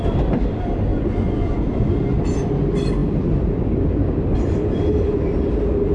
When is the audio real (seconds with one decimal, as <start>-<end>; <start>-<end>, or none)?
0.0-0.9; 1.9-5.9